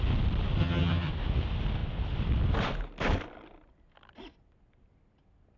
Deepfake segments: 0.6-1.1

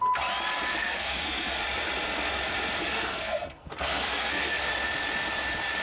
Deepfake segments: 0.7-1.6; 2.8-4.6

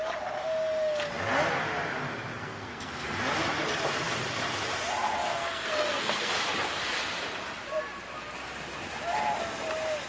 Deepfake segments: 2.3-3.2; 5.3-6.3

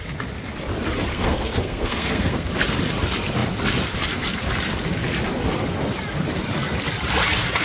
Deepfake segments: 1.1-2.5

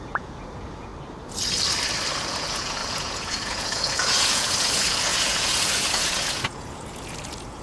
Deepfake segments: 0.0-0.9; 2.1-7.6

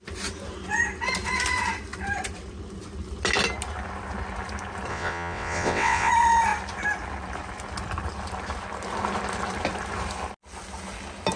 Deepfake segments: 4.9-6.1